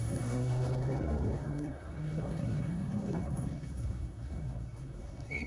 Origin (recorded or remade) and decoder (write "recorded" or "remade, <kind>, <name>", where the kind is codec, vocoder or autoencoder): remade, codec, SNAC